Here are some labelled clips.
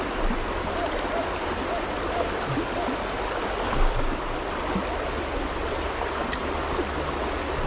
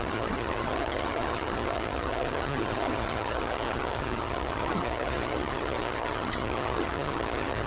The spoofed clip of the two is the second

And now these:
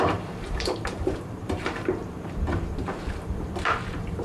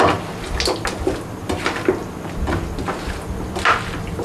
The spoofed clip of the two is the first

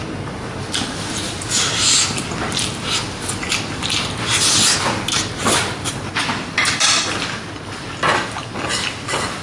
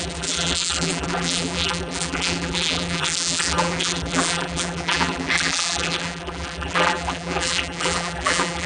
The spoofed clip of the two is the second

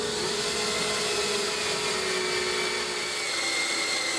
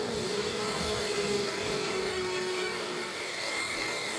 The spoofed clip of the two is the second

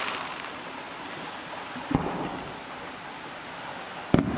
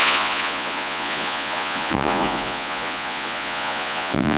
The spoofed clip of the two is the second